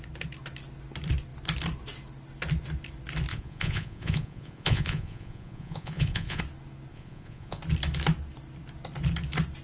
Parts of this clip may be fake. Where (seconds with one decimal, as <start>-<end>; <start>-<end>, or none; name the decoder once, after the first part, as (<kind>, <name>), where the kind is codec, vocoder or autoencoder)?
3.3-6.4 (vocoder, Vocos); 6.9-7.6